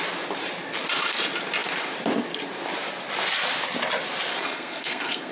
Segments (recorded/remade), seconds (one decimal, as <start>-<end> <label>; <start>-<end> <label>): 0.0-4.3 recorded; 4.3-5.3 remade